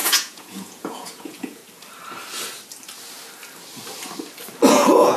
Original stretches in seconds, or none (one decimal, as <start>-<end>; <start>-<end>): 1.6-4.7